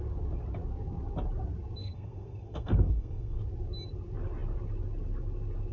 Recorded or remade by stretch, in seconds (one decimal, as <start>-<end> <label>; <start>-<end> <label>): 0.0-1.8 recorded; 1.8-3.4 remade; 3.4-5.7 recorded